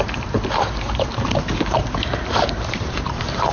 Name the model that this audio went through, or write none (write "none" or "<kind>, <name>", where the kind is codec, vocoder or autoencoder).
vocoder, BigVGAN v2